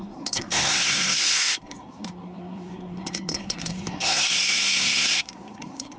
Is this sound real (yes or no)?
no